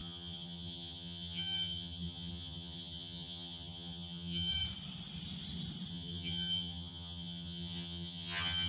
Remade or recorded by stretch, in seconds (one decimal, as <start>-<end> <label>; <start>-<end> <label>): 0.0-4.5 remade; 4.5-5.9 recorded; 5.9-8.7 remade